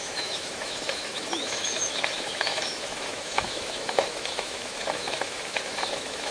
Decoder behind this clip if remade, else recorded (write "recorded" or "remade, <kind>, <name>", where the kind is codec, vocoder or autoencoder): remade, autoencoder, DAC-VAE